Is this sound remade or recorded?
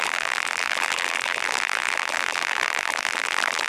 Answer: remade